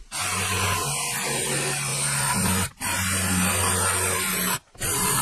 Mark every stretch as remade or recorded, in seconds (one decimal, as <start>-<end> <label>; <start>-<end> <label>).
0.0-5.2 recorded